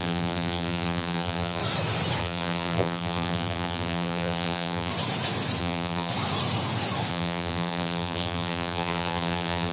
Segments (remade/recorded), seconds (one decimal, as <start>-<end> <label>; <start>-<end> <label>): 0.0-1.6 remade; 1.6-2.2 recorded; 2.2-4.9 remade; 4.9-5.6 recorded; 5.6-6.1 remade; 6.1-7.1 recorded; 7.1-9.7 remade